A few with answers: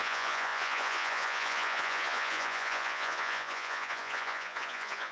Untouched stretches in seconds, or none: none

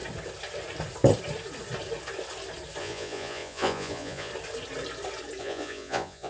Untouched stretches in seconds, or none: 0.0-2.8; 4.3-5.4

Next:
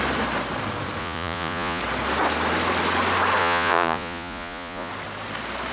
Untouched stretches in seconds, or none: 0.0-1.0; 1.8-3.4; 4.9-5.7

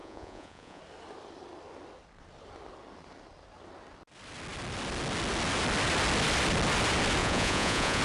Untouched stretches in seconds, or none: 0.8-7.2

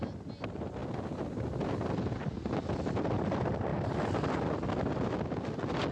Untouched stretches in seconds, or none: 0.0-5.9